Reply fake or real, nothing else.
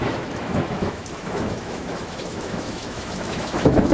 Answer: fake